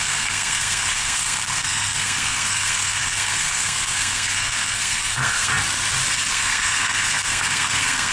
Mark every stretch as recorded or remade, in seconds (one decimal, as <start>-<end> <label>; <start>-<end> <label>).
0.0-5.5 remade; 5.5-6.3 recorded; 6.3-8.1 remade